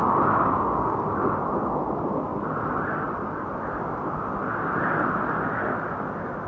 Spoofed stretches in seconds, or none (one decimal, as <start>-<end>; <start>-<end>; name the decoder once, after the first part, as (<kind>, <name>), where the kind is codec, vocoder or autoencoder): 0.0-1.0 (codec, DAC)